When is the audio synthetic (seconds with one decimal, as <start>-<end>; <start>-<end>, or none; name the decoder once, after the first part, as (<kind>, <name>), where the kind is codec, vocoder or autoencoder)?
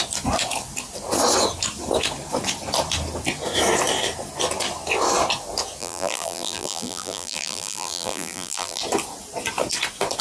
5.8-8.8 (vocoder, BigVGAN v2)